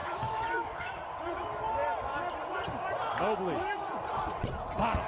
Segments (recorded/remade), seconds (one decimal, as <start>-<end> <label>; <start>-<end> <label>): 0.0-0.9 remade; 0.9-5.1 recorded